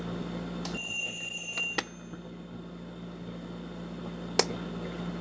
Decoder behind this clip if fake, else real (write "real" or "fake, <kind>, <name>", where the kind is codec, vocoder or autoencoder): real